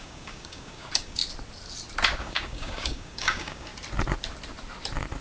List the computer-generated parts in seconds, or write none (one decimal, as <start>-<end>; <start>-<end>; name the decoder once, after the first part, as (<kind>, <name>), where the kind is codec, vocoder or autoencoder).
0.0-1.2 (codec, DAC); 2.2-3.7